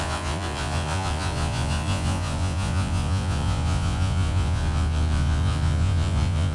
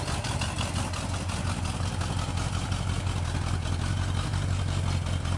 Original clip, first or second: second